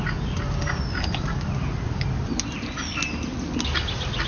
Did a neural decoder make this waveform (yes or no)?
no